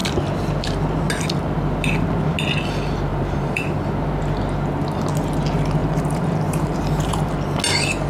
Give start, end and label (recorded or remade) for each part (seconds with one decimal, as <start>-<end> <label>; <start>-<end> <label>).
0.0-3.1 recorded; 3.1-3.8 remade; 3.8-5.8 recorded; 5.8-7.3 remade; 7.3-8.1 recorded